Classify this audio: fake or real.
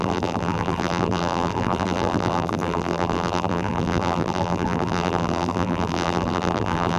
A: fake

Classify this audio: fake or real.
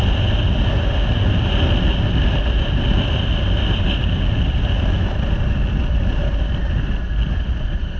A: real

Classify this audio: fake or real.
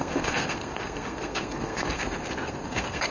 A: fake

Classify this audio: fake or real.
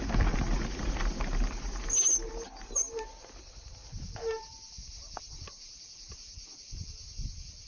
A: real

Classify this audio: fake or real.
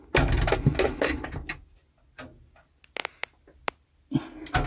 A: real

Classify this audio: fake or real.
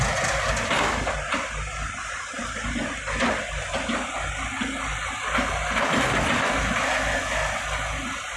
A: real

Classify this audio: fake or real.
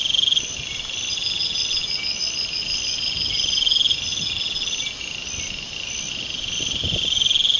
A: real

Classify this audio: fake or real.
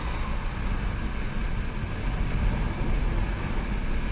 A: real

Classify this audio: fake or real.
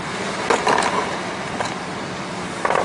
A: real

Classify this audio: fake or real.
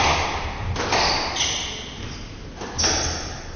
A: real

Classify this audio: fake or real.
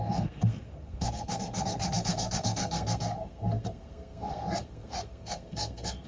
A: fake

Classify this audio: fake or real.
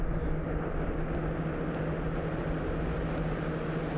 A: real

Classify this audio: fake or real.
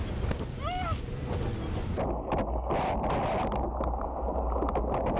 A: real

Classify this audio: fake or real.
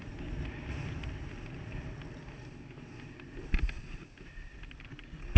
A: real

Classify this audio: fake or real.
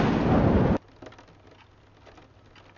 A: real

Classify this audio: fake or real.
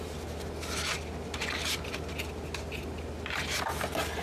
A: real